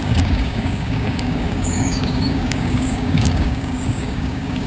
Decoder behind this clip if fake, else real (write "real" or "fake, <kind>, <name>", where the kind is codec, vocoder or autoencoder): fake, codec, DAC